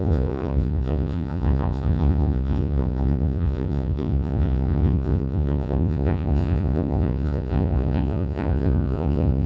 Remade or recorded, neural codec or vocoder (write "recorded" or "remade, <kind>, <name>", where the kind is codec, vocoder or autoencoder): remade, vocoder, Vocos